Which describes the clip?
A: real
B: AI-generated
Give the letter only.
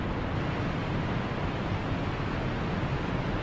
A